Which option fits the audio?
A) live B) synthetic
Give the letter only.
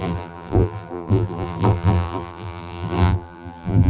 B